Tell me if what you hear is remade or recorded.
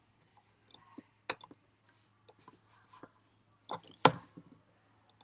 recorded